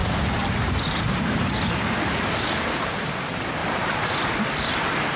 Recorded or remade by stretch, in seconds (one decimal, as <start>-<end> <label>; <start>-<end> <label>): 0.0-3.1 remade; 3.1-3.6 recorded; 3.6-4.4 remade; 4.4-5.2 recorded